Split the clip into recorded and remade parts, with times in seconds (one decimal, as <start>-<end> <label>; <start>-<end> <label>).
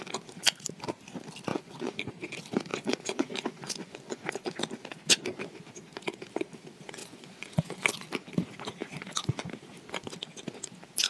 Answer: 0.0-1.5 recorded; 1.5-2.1 remade; 2.1-2.7 recorded; 2.7-4.5 remade; 4.5-7.0 recorded; 7.0-7.9 remade; 7.9-11.1 recorded